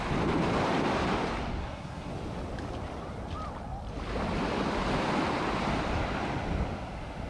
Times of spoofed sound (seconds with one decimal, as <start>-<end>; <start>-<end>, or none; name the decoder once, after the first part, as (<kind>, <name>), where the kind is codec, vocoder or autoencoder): 1.6-2.1 (codec, SNAC)